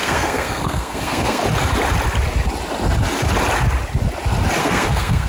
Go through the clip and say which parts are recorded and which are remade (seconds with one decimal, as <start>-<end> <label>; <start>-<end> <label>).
0.0-1.4 remade; 1.4-4.6 recorded; 4.6-5.3 remade